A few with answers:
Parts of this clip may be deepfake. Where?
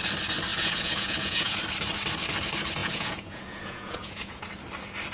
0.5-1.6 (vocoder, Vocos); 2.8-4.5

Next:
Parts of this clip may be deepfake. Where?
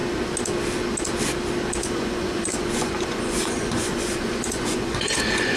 1.8-5.6 (vocoder, Vocos)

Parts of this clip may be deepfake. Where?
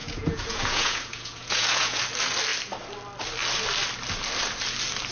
0.0-2.0 (vocoder, Vocos)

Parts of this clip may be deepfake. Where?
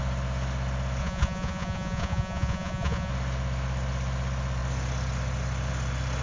1.0-3.1 (vocoder, Vocos)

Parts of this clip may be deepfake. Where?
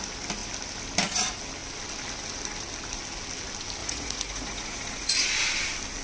3.8-5.1 (vocoder, Vocos)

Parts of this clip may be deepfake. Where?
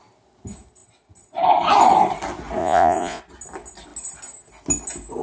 2.6-3.2 (vocoder, Vocos)